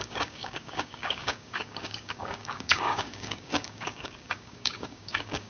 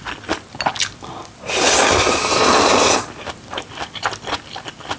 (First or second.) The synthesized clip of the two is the first